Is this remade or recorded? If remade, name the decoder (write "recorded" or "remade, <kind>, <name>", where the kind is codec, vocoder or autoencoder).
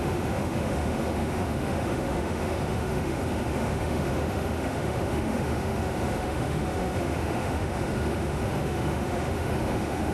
remade, autoencoder, DAC-VAE